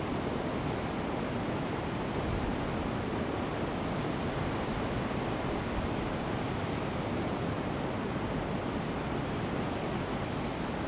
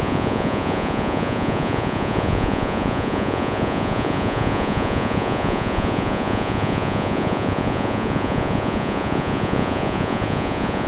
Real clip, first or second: first